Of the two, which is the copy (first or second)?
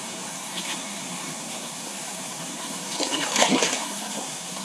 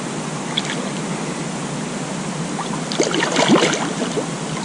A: first